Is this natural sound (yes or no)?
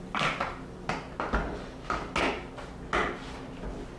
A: yes